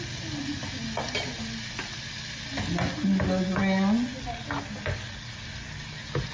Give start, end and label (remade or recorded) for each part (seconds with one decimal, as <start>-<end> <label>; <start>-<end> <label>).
0.0-6.3 recorded